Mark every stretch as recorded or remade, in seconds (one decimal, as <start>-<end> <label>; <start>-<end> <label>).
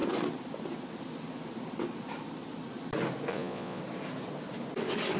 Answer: 0.0-3.3 recorded; 3.3-3.8 remade; 3.8-5.2 recorded